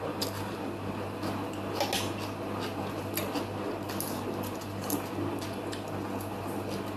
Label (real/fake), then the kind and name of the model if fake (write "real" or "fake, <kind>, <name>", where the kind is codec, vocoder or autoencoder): real